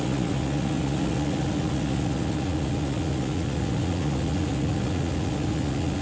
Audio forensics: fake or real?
fake